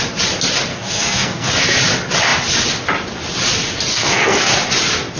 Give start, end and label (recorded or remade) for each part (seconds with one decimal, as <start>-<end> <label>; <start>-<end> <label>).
0.0-0.7 recorded; 0.7-1.5 remade; 1.5-3.9 recorded; 3.9-4.5 remade; 4.5-5.2 recorded